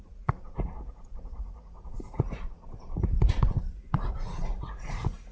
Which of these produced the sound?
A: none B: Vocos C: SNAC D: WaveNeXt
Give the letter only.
B